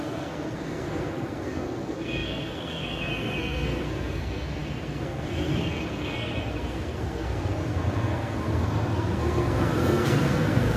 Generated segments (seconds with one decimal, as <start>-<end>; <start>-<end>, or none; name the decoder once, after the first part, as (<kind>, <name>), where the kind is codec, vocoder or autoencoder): 0.0-10.8 (codec, SNAC)